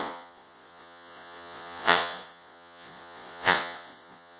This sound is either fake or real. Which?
fake